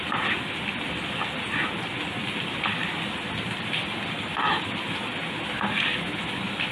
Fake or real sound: real